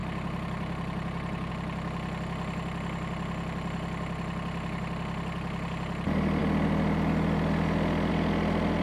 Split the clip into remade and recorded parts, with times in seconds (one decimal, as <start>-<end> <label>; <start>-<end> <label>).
0.0-1.5 remade; 1.5-8.8 recorded